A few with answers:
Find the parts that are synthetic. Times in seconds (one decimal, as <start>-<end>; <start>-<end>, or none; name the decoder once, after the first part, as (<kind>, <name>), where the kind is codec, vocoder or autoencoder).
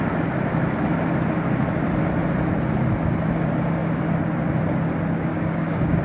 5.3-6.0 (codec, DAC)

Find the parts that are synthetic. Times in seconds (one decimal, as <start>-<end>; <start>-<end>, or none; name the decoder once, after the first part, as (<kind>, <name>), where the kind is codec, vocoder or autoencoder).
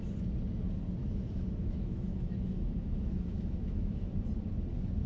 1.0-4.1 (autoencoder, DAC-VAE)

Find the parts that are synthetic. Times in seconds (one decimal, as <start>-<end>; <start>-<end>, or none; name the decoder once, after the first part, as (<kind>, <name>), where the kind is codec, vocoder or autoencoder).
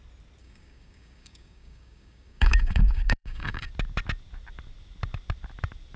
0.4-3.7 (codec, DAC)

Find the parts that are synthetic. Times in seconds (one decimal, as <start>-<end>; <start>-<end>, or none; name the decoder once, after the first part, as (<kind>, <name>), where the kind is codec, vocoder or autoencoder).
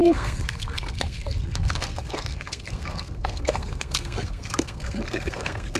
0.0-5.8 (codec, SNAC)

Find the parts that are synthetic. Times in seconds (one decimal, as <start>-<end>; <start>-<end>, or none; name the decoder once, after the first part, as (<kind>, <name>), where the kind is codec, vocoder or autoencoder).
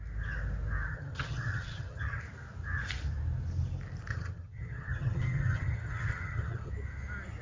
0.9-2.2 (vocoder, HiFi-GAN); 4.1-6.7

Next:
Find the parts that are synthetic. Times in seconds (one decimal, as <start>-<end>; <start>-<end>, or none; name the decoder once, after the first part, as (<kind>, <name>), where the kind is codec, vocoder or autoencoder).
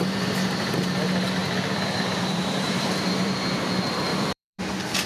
1.4-3.4 (vocoder, BigVGAN v2); 4.1-4.6